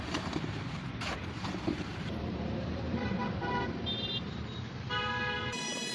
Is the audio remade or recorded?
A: remade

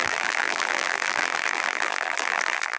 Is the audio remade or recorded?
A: remade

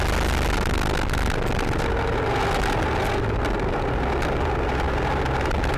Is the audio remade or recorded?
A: recorded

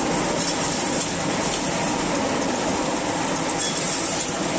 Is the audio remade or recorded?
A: recorded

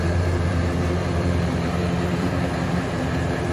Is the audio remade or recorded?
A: remade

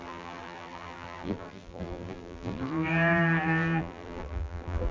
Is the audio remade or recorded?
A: remade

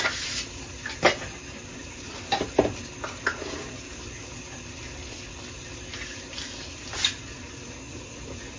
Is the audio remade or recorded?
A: recorded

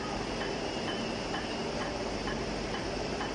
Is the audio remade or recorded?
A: remade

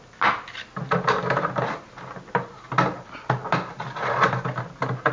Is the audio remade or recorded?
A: recorded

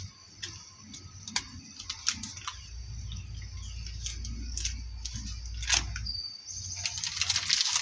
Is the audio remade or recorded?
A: recorded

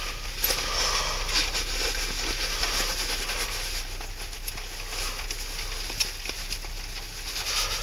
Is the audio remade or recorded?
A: recorded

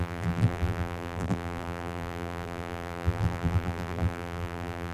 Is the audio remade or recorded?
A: remade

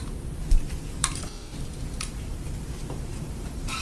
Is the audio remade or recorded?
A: remade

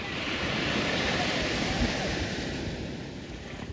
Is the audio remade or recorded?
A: remade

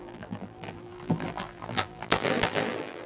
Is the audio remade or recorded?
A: remade